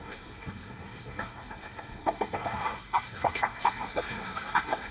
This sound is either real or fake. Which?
fake